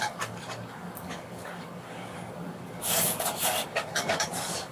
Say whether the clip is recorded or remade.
remade